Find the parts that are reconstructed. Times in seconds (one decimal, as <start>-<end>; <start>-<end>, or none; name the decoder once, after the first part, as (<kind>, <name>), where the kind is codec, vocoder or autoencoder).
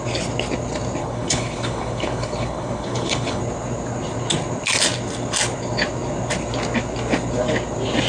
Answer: 1.0-3.4 (codec, HILCodec)